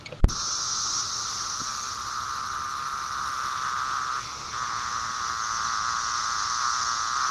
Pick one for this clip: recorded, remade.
recorded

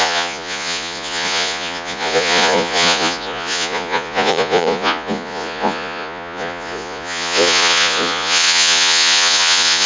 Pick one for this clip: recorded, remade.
remade